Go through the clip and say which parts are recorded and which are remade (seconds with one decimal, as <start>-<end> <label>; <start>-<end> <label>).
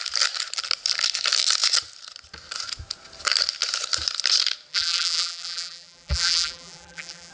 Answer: 0.0-4.7 recorded; 4.7-7.3 remade